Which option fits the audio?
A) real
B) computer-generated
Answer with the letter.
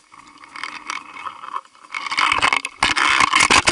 A